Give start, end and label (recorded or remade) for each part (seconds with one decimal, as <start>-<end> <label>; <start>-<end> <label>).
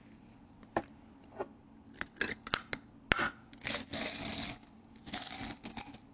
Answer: 0.0-6.1 recorded